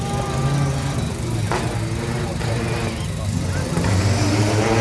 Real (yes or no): yes